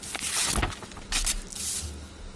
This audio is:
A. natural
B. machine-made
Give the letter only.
A